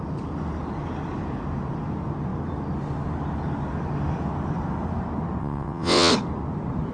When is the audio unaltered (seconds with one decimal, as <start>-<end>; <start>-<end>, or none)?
0.0-5.4; 6.1-6.9

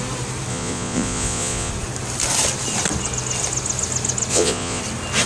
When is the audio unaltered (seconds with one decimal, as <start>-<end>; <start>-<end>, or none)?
0.0-0.5; 1.7-4.3; 4.8-5.3

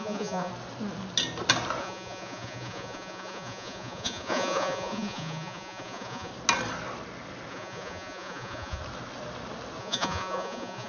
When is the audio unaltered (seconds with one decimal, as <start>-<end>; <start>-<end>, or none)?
0.5-1.8; 6.3-7.5; 8.8-9.8

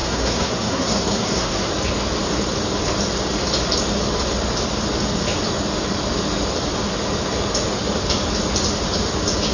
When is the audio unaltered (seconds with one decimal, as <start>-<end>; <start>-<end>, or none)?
1.7-9.5

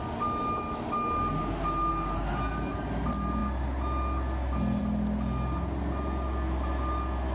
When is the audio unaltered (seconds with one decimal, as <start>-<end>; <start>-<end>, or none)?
0.0-7.3

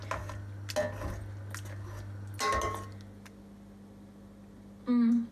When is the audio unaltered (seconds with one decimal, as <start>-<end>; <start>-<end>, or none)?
0.0-5.3

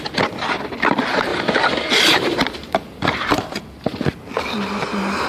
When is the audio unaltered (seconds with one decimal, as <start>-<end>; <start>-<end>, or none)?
0.0-1.3; 3.6-5.3